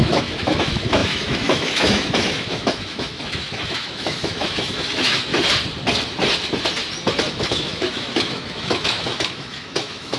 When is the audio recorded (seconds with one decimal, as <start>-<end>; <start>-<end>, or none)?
5.3-7.3

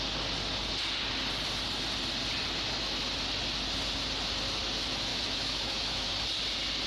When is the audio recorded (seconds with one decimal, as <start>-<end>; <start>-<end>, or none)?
0.0-5.1; 6.1-6.9

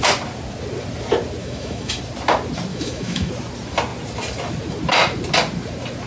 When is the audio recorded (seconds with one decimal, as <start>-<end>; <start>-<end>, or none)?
0.0-1.4; 2.0-2.7; 3.3-6.1

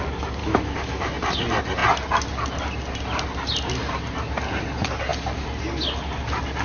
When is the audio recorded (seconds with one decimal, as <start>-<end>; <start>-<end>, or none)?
0.0-0.4; 1.1-6.6

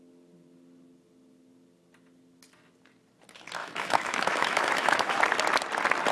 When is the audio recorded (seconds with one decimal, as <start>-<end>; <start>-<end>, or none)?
0.0-3.6; 5.2-6.1

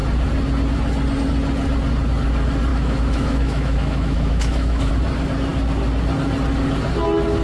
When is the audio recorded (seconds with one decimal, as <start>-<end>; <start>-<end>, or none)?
0.0-2.7; 4.9-7.4

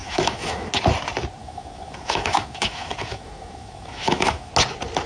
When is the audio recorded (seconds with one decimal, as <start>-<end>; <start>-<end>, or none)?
0.7-1.4; 4.5-5.1